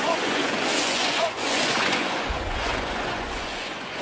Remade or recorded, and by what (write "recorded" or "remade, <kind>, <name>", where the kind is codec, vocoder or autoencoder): remade, vocoder, Vocos